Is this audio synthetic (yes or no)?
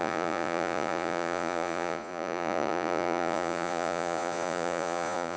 yes